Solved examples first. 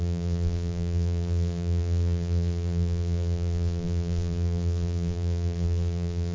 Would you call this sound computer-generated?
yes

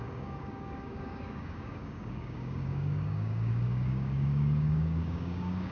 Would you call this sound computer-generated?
yes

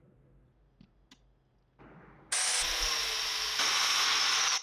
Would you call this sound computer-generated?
no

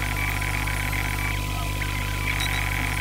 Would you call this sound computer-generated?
no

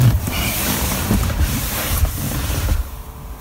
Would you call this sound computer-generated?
yes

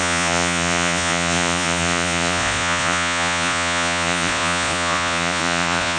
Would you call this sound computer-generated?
yes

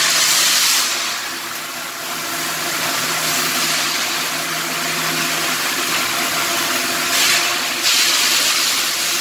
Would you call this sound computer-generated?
no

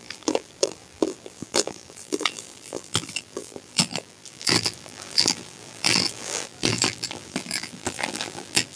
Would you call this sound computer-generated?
yes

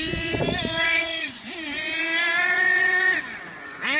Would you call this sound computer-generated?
yes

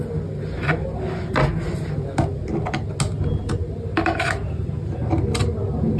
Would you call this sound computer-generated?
no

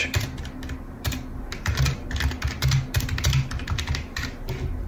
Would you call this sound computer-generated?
no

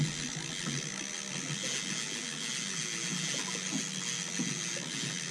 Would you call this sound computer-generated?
no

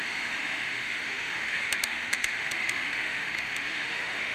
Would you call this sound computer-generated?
yes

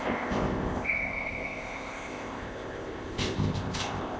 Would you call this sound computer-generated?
yes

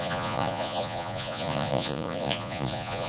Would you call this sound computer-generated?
yes